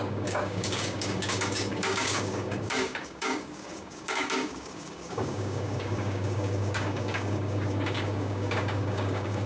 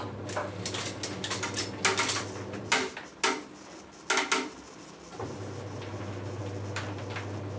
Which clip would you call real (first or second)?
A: second